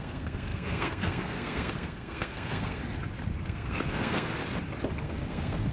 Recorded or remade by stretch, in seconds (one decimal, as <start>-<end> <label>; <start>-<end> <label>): 0.0-2.8 remade; 2.8-3.4 recorded; 3.4-4.3 remade; 4.3-5.0 recorded; 5.0-5.7 remade